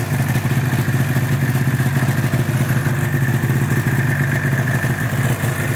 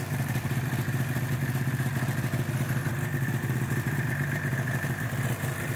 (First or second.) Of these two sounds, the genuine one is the first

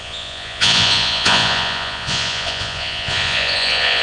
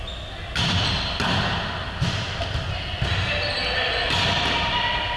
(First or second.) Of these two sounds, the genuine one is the second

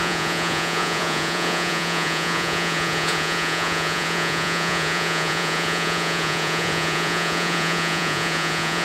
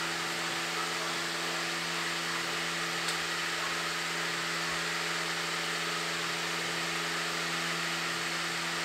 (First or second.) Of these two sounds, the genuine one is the second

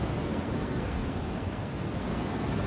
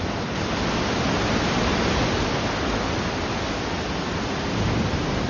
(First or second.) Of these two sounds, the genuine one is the second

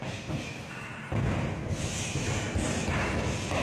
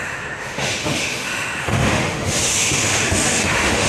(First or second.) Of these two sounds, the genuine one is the first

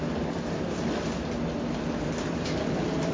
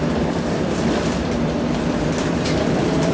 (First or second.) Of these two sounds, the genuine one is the first